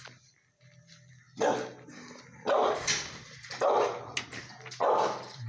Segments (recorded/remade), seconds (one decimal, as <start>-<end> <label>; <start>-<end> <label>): 0.0-2.6 recorded; 2.6-4.1 remade; 4.1-5.5 recorded